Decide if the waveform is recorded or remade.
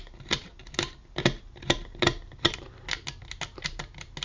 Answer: recorded